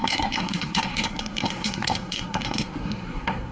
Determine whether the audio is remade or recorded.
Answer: remade